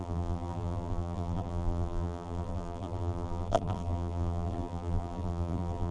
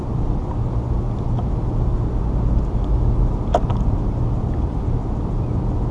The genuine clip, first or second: second